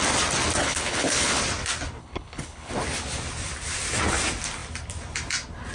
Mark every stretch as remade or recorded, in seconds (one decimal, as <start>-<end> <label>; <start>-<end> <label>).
0.0-0.6 recorded; 0.6-1.4 remade; 1.4-2.0 recorded; 2.0-2.7 remade; 2.7-5.7 recorded